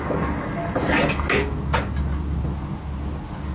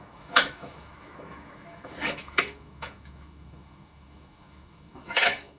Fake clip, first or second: second